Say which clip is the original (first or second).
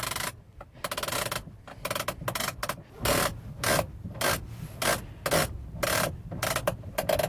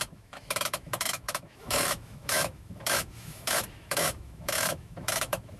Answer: first